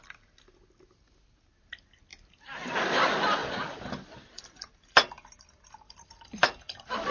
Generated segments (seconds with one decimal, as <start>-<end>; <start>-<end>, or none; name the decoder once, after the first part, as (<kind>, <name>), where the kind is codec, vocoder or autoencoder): 3.4-7.1 (vocoder, BigVGAN v2)